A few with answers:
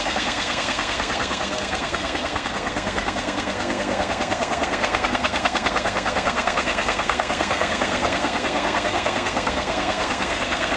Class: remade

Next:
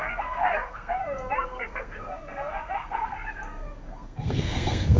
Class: remade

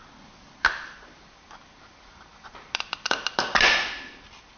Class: recorded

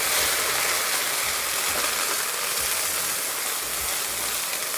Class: recorded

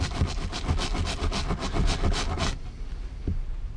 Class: recorded